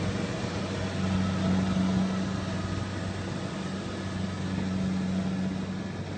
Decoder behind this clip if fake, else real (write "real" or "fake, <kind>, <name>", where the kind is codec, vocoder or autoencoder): real